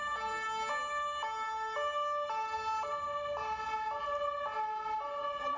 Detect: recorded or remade recorded